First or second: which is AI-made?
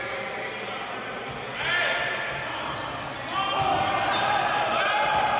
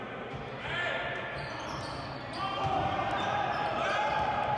second